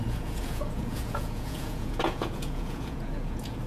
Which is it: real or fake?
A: fake